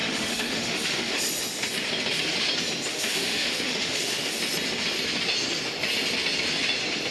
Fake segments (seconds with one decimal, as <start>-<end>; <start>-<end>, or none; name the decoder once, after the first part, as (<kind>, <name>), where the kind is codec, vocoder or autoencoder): 0.0-1.2 (autoencoder, DAC-VAE); 2.9-4.4